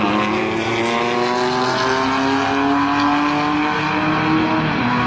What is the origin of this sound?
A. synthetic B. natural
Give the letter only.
B